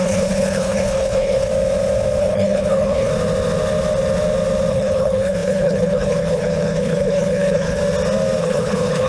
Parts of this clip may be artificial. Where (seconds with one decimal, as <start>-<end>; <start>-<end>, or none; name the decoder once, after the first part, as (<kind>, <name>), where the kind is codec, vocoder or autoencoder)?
0.0-1.5 (codec, HILCodec); 2.2-3.1; 4.7-7.8; 8.4-9.1